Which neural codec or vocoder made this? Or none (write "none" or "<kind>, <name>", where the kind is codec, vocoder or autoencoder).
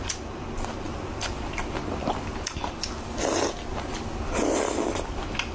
none